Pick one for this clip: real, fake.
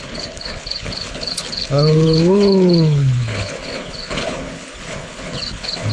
fake